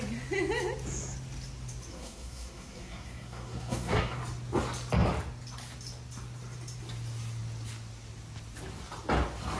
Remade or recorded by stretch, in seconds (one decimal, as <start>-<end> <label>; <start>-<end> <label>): 0.0-1.9 recorded; 1.9-4.2 remade; 4.2-9.6 recorded